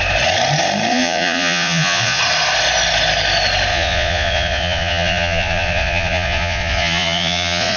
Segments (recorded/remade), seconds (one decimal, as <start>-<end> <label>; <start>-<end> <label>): 0.0-0.9 recorded; 0.9-2.2 remade; 2.2-3.7 recorded; 3.7-7.8 remade